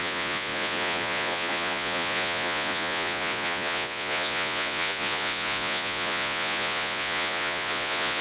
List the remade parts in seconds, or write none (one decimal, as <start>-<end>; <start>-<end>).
0.0-8.2